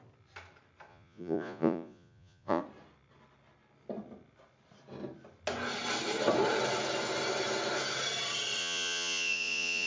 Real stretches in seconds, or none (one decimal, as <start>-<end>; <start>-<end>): 0.0-0.9; 2.6-8.6